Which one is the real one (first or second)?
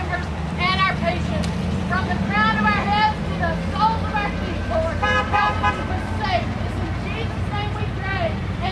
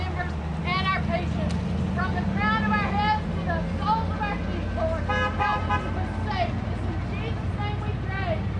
second